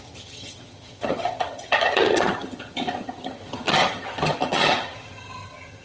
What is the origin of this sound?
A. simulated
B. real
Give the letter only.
A